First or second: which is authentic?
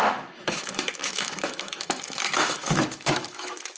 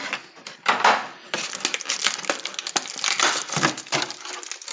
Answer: second